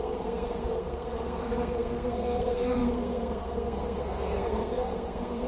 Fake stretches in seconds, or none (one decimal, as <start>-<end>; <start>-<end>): 0.0-5.5